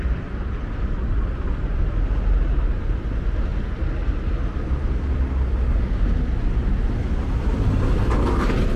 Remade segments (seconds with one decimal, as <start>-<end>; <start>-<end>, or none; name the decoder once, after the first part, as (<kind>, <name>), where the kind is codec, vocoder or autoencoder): none